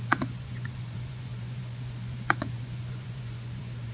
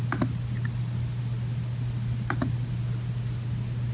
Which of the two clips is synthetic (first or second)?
first